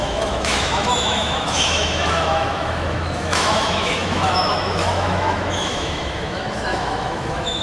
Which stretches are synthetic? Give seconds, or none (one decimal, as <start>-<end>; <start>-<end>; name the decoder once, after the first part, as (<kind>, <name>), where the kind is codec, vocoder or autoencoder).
0.0-7.6 (autoencoder, DAC-VAE)